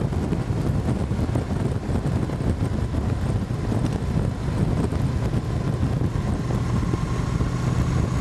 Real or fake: real